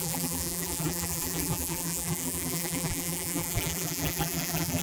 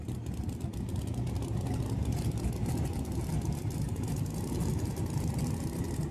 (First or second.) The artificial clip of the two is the first